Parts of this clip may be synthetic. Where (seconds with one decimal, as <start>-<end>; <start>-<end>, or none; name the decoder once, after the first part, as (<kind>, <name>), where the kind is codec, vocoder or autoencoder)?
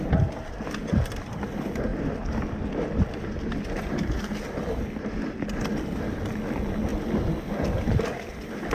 none